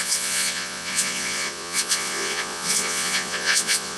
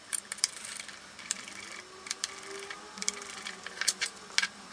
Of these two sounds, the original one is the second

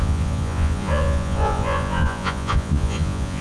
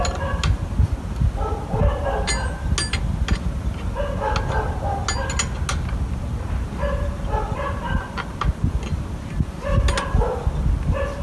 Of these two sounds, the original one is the second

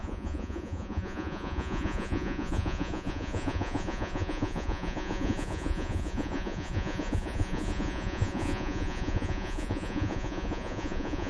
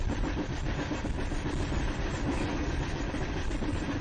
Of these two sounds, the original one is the second